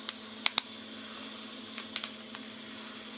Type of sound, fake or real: real